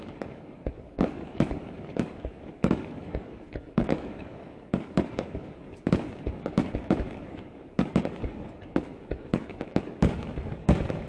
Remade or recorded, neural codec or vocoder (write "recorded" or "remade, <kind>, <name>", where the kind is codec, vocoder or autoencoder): remade, codec, DAC